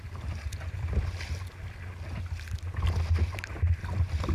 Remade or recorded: recorded